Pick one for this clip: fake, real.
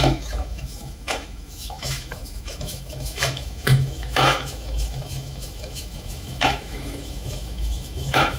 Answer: fake